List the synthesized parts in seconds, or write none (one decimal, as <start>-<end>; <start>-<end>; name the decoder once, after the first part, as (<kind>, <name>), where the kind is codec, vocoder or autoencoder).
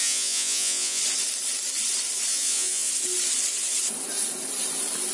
0.0-1.0 (vocoder, Vocos); 2.3-2.9